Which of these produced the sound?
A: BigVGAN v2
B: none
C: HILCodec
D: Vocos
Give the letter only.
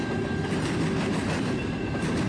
B